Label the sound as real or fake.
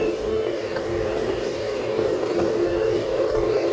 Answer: fake